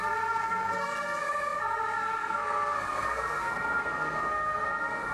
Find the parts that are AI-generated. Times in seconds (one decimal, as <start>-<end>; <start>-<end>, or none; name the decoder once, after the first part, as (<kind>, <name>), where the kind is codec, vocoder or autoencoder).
0.0-5.1 (codec, SNAC)